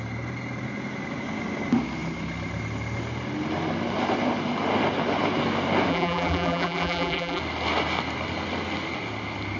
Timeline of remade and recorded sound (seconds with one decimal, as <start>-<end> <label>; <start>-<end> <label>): 0.0-5.9 recorded; 5.9-7.4 remade; 7.4-9.6 recorded